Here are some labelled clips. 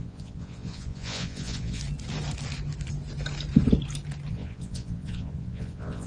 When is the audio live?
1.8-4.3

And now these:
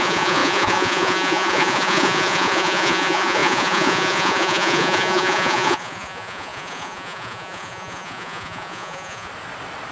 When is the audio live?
9.3-9.9

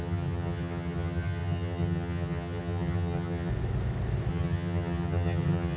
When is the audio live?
3.5-4.3

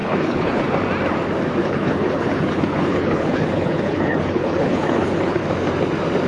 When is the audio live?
0.6-1.6; 5.4-6.3

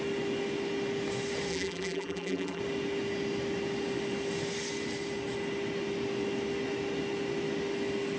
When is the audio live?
0.0-1.5; 2.6-8.2

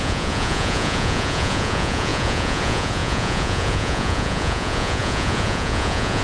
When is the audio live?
none

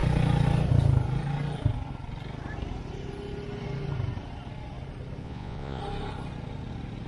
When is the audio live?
0.0-5.2; 5.8-7.1